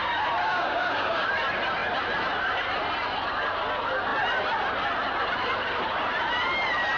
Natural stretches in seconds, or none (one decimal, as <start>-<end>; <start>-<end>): 0.0-0.4; 1.3-7.0